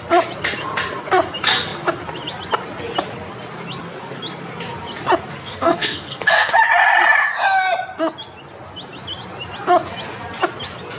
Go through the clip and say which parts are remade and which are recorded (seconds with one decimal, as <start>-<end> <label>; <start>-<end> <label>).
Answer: 0.0-5.4 recorded; 5.4-6.6 remade; 6.6-11.0 recorded